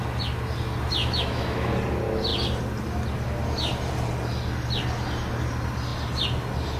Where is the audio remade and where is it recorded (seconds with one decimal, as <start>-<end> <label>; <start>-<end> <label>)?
0.0-1.0 recorded; 1.0-1.7 remade; 1.7-6.8 recorded